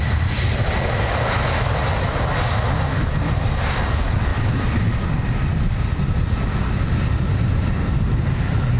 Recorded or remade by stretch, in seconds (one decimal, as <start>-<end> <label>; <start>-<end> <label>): 0.0-8.8 recorded